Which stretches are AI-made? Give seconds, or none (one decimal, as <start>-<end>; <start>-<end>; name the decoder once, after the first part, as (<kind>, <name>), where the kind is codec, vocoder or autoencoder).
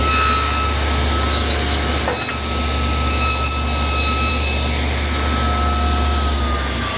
none